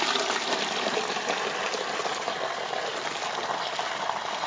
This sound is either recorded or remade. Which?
recorded